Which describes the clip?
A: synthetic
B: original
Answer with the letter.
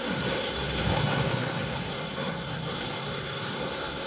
A